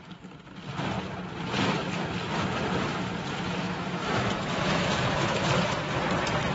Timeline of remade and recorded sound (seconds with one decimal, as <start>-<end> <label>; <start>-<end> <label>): 0.0-3.6 recorded; 3.6-5.6 remade; 5.6-6.5 recorded